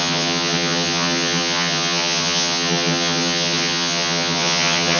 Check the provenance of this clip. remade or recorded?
remade